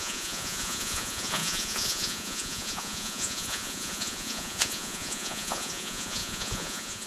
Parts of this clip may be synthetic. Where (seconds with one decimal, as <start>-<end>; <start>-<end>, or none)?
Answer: 0.0-7.1